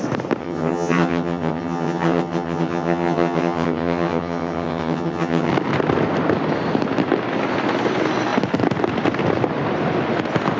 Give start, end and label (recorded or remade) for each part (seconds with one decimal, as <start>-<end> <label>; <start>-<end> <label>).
0.0-0.4 recorded; 0.4-5.5 remade; 5.5-10.6 recorded